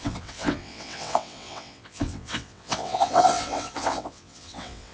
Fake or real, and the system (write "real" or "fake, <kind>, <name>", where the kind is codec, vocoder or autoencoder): fake, vocoder, WaveNeXt